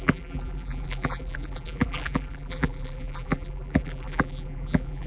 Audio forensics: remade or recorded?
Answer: remade